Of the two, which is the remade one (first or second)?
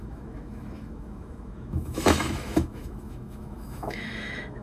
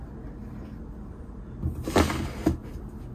first